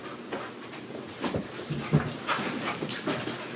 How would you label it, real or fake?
real